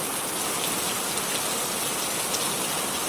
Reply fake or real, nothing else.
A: real